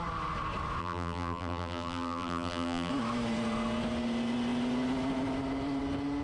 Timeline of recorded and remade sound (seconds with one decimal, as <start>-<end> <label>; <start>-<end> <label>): 0.0-0.8 recorded; 0.8-2.9 remade; 2.9-6.2 recorded